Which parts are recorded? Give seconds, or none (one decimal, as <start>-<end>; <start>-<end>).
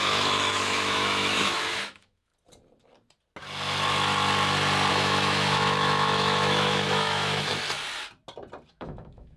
2.3-4.9; 7.5-8.7